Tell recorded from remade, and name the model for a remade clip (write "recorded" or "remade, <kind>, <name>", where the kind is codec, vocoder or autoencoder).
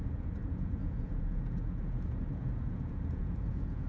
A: remade, vocoder, Vocos